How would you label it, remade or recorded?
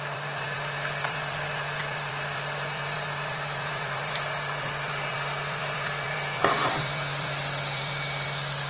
remade